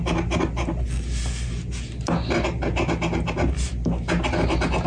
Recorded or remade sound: recorded